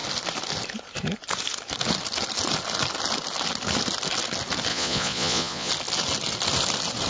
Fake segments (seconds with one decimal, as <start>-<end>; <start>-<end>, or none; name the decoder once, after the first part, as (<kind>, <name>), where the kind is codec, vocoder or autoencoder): 4.7-5.7 (vocoder, Vocos)